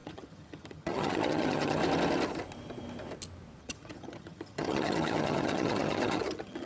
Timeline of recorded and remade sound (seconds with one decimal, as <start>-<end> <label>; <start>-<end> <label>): 0.0-1.8 remade; 1.8-3.6 recorded; 3.6-6.7 remade

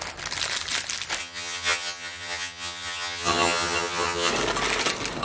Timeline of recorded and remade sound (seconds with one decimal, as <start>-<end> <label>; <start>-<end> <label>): 0.0-1.2 recorded; 1.2-4.3 remade; 4.3-5.2 recorded

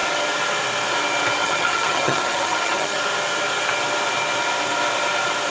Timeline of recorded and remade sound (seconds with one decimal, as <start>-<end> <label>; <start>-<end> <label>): 0.0-1.4 recorded; 1.4-3.0 remade; 3.0-5.5 recorded

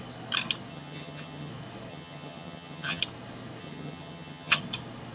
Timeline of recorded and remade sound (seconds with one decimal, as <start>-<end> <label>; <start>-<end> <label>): 0.0-0.7 recorded; 0.7-1.5 remade; 1.5-1.9 recorded; 1.9-3.0 remade; 3.0-3.6 recorded; 3.6-4.6 remade; 4.6-5.1 recorded

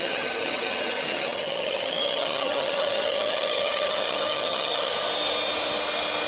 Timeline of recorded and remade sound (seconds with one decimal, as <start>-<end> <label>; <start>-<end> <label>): 0.0-4.9 remade; 4.9-6.3 recorded

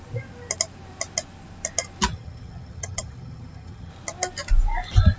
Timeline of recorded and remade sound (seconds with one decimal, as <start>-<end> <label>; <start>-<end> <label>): 0.0-2.1 recorded; 2.1-3.9 remade; 3.9-5.2 recorded